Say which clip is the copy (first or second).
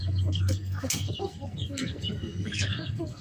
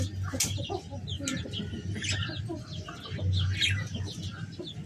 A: first